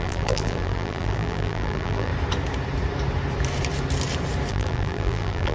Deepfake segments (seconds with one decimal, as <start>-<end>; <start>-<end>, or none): 0.0-2.1; 4.5-5.5

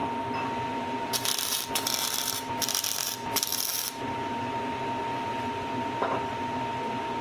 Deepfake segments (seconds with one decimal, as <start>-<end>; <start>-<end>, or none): none

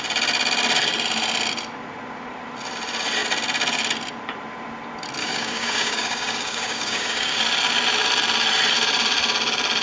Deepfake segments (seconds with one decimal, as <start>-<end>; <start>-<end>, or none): 5.2-7.4

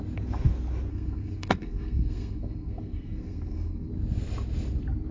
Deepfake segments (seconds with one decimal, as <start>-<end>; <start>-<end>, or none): 0.9-3.9